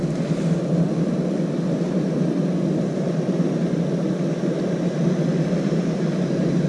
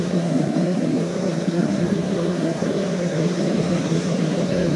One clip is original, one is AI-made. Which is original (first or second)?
first